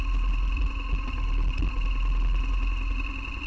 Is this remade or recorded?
recorded